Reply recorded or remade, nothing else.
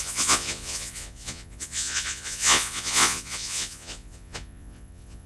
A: remade